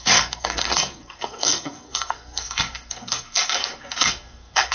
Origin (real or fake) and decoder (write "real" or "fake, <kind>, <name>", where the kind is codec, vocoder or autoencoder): fake, codec, SNAC